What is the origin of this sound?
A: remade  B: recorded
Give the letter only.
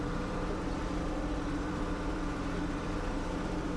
A